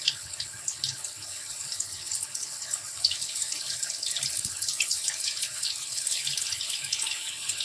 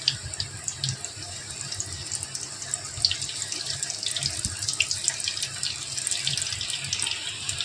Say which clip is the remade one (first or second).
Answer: first